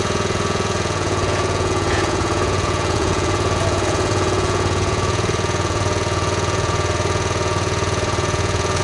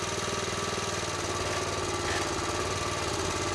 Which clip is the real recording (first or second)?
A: second